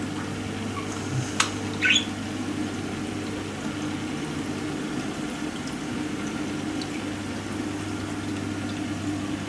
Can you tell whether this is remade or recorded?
recorded